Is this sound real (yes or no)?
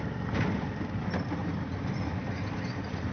yes